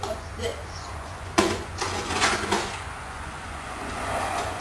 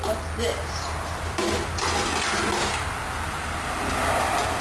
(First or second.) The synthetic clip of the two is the first